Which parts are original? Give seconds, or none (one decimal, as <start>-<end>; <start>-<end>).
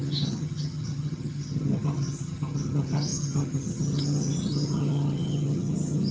none